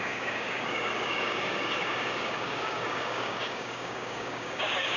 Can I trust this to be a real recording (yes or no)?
no